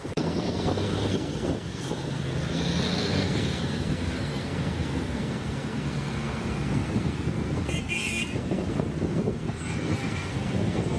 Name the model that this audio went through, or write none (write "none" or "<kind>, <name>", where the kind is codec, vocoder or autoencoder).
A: codec, SNAC